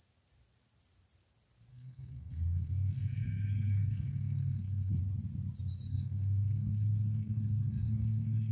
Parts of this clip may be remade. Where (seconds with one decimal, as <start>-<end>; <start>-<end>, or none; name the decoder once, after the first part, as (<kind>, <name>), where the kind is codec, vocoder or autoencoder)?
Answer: 1.7-5.0 (codec, SNAC); 5.9-8.5

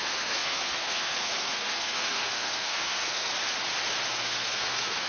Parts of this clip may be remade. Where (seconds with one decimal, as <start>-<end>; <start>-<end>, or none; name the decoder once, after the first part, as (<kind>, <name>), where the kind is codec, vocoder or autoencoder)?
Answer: 0.0-3.3 (codec, SNAC); 4.1-5.1

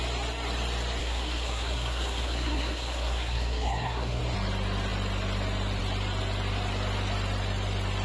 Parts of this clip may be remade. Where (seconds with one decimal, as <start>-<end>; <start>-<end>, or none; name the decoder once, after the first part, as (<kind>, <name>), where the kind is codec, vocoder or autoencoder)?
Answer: 1.0-4.2 (codec, SNAC)

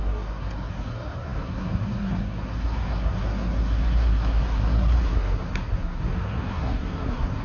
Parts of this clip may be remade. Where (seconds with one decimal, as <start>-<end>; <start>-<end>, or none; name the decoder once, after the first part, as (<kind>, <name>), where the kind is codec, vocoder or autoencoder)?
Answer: 0.0-7.4 (codec, SNAC)